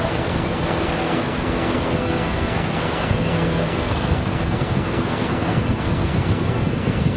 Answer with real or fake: fake